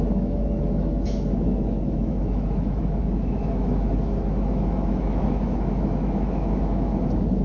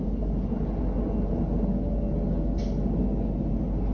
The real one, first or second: second